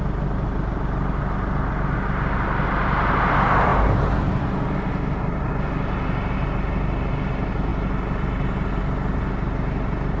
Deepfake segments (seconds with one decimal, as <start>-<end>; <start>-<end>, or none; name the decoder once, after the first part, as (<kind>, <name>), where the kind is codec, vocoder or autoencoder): none